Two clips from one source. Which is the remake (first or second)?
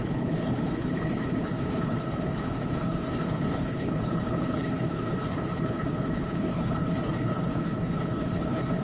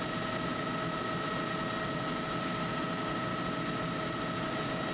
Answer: first